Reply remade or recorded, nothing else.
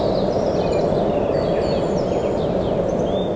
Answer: recorded